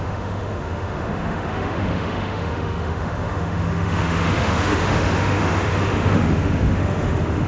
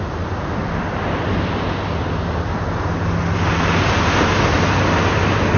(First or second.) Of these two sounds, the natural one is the second